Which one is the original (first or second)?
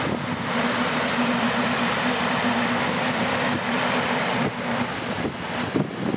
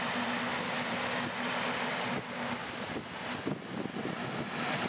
second